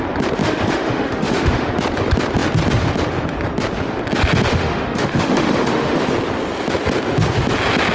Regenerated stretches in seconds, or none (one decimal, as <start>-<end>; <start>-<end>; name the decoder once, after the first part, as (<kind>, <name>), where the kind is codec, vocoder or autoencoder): 0.4-1.7 (autoencoder, DAC-VAE); 4.5-6.1